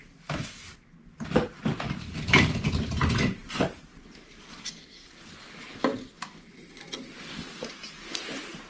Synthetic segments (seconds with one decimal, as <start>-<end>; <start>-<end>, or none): none